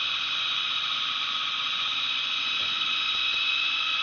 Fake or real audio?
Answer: fake